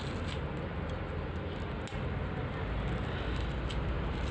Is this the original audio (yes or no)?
yes